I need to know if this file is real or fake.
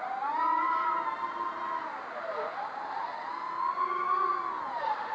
real